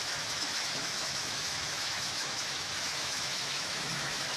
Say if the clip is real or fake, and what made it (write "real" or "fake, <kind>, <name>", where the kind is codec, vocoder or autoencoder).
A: fake, autoencoder, DAC-VAE